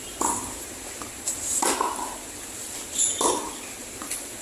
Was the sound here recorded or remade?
remade